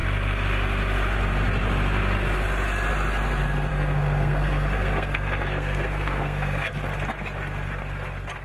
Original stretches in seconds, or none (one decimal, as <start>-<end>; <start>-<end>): 0.0-3.7; 6.7-8.4